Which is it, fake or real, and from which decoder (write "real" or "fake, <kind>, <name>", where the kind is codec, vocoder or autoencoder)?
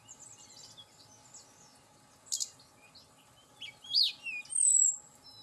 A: real